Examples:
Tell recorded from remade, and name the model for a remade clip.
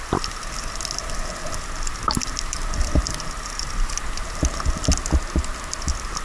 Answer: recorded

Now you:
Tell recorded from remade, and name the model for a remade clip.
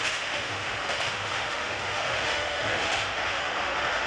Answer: remade, autoencoder, DAC-VAE